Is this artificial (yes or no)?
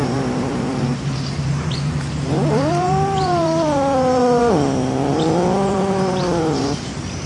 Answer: yes